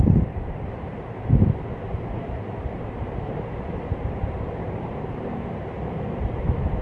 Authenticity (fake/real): fake